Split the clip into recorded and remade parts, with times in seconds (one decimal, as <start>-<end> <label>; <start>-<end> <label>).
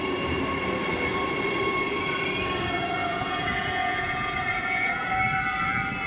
0.0-3.0 recorded; 3.0-5.1 remade; 5.1-6.1 recorded